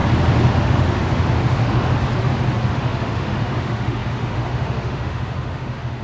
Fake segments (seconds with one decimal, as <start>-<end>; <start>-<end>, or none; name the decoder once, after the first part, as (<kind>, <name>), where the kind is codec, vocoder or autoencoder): 0.5-1.9 (autoencoder, DAC-VAE); 2.7-6.0